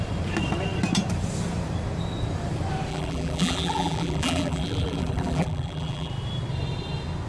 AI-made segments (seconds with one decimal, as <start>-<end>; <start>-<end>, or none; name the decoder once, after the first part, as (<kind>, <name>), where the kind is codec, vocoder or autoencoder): 2.9-6.1 (vocoder, BigVGAN v2)